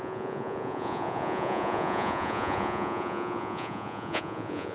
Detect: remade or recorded remade